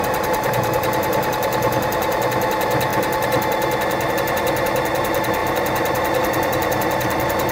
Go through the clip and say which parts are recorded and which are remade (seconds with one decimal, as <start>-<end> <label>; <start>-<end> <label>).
0.0-7.5 remade